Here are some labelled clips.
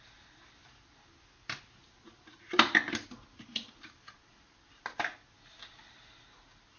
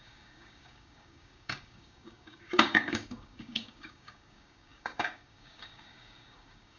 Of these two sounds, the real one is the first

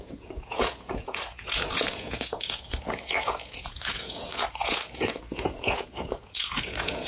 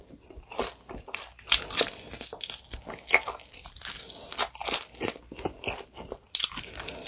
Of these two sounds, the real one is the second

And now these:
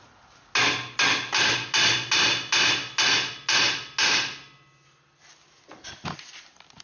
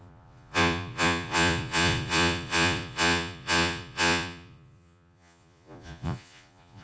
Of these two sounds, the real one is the first